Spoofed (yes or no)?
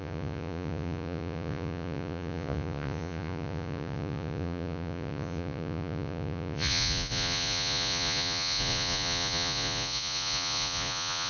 yes